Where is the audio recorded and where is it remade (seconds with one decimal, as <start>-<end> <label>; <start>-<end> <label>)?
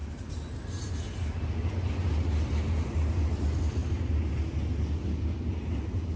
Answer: 0.0-6.2 recorded